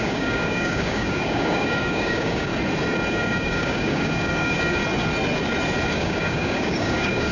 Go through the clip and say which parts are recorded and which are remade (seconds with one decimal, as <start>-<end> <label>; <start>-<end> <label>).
0.0-2.5 remade; 2.5-3.1 recorded; 3.1-4.8 remade; 4.8-5.9 recorded; 5.9-7.3 remade